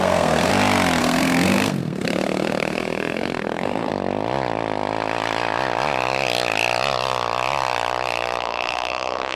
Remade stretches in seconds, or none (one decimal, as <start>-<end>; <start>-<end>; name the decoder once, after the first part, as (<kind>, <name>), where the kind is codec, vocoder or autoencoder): 0.0-0.5 (codec, SNAC); 1.0-3.9; 8.4-9.3